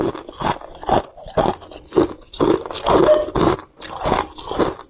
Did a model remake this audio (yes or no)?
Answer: no